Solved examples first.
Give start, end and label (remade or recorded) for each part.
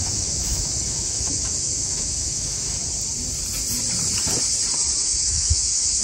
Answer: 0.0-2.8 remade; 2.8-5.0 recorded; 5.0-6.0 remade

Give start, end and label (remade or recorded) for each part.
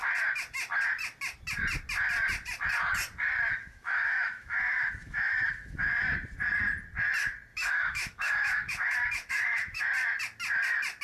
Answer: 0.0-3.5 recorded; 3.5-5.8 remade; 5.8-7.5 recorded; 7.5-9.8 remade; 9.8-11.0 recorded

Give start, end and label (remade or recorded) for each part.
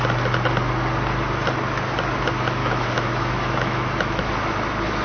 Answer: 0.0-2.6 recorded; 2.6-4.3 remade; 4.3-5.0 recorded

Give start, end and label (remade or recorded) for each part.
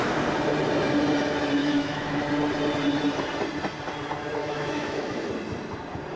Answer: 0.0-1.6 recorded; 1.6-2.3 remade; 2.3-4.4 recorded; 4.4-5.3 remade; 5.3-6.2 recorded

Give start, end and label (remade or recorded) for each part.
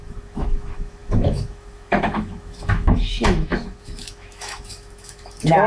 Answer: 0.0-5.7 remade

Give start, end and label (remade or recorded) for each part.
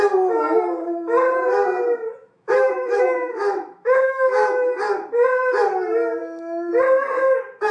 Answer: 0.0-2.2 recorded; 2.2-4.8 remade; 4.8-6.2 recorded; 6.2-6.7 remade; 6.7-7.7 recorded